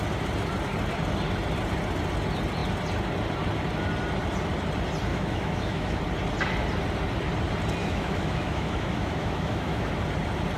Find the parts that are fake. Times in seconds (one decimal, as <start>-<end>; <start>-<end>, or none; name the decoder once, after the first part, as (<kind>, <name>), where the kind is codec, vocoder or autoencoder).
5.1-6.0 (autoencoder, DAC-VAE); 7.8-9.9